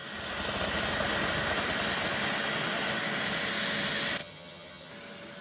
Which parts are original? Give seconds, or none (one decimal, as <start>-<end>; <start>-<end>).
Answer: 0.0-4.2; 4.9-5.4

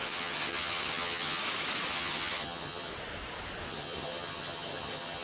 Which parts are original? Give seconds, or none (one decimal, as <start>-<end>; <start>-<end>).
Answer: 1.4-1.9; 2.9-3.7

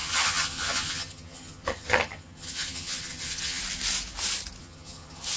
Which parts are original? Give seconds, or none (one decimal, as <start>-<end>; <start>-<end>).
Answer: 3.6-4.6

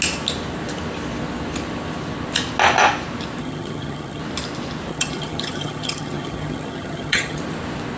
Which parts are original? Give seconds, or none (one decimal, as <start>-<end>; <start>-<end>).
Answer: 0.0-3.4; 4.2-4.9; 7.4-8.0

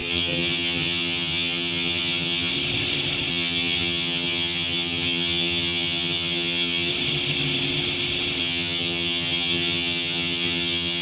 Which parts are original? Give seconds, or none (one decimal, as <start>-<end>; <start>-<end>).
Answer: 2.5-3.3; 6.9-8.4

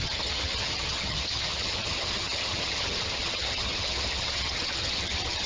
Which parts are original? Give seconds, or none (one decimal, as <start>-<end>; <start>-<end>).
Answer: none

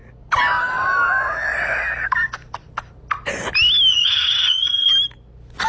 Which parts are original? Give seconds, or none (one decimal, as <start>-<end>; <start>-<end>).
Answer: 0.0-3.9; 4.9-5.7

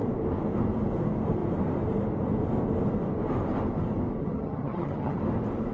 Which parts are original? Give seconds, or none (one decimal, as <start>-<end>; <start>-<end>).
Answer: 0.0-4.2; 5.2-5.7